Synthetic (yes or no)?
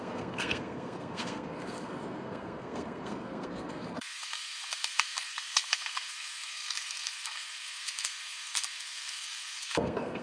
yes